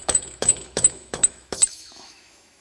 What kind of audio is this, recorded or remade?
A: remade